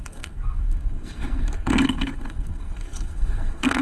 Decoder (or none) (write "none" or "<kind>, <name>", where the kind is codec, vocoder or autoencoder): codec, SNAC